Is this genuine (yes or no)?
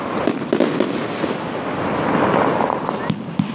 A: yes